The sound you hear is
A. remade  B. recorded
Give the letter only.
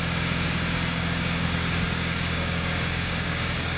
A